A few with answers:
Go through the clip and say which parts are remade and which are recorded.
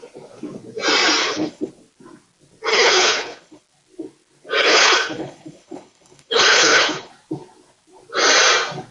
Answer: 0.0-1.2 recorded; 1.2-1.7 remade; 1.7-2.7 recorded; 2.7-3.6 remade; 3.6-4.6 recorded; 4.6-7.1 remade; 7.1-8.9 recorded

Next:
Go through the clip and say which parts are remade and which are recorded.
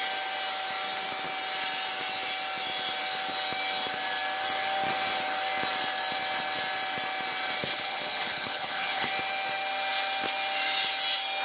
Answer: 0.0-7.6 recorded; 7.6-9.1 remade; 9.1-11.4 recorded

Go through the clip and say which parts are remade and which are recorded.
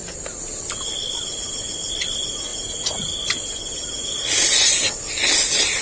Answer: 0.0-5.8 recorded